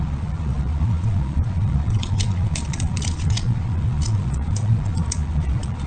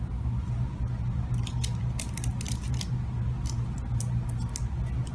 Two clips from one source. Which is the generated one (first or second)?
first